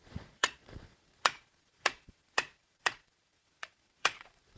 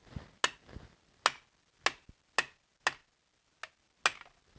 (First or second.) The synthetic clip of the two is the first